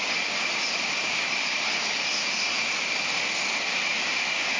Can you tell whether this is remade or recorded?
recorded